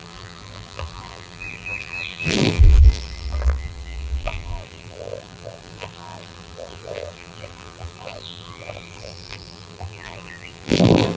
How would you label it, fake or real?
fake